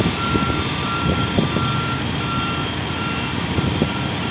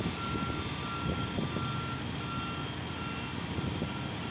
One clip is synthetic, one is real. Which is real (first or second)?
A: second